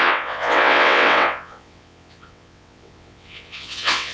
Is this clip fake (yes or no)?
yes